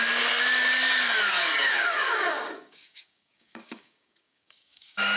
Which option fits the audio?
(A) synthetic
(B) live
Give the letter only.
A